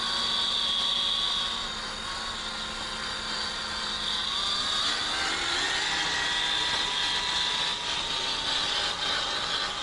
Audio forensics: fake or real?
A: real